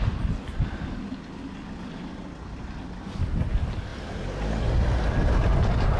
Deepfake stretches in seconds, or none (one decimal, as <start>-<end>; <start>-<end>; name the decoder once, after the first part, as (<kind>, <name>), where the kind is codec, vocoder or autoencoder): none